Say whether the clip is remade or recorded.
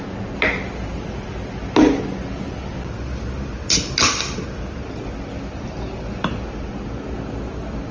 recorded